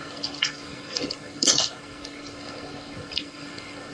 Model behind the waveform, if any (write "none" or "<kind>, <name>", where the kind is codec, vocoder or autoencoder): codec, SNAC